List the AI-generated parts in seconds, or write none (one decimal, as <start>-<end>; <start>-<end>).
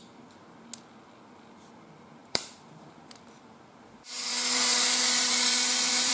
2.2-6.1